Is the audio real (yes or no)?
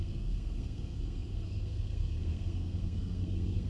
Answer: no